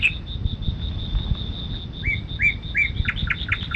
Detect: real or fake real